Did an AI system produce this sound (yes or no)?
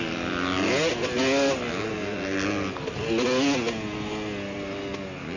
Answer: no